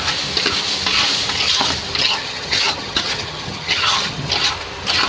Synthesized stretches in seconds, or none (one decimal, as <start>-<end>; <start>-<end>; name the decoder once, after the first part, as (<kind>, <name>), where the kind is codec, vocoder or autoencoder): 2.0-4.3 (vocoder, HiFi-GAN)